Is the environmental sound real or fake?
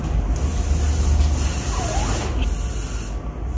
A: real